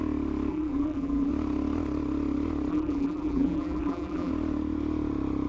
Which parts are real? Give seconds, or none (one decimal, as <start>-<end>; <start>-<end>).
0.0-0.5; 1.3-2.7; 4.3-5.5